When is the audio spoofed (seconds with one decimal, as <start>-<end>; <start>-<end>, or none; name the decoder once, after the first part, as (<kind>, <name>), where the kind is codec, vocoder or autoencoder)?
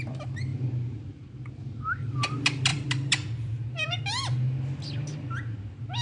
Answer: 2.7-4.0 (vocoder, BigVGAN v2)